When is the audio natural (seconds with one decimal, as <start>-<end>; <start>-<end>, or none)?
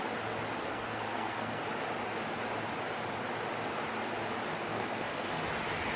0.0-0.7; 1.6-4.7; 5.4-6.0